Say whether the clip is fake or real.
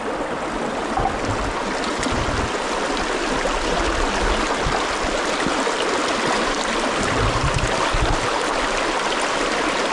real